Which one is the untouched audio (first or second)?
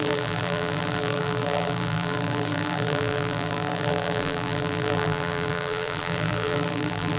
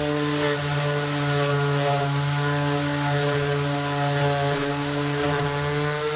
second